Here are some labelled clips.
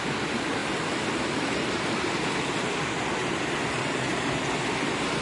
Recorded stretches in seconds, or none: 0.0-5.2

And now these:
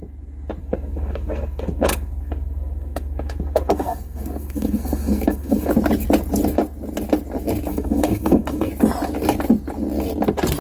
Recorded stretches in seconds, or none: 0.0-0.6; 5.7-7.7; 8.7-10.6